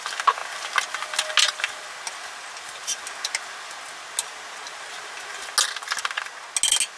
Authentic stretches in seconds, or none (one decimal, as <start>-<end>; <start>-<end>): 0.0-7.0